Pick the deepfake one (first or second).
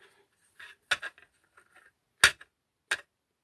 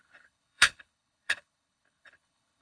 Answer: second